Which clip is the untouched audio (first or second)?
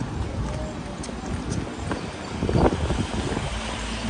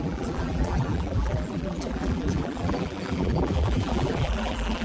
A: first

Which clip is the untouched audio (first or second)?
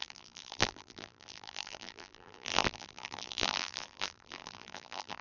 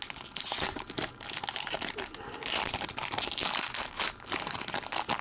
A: second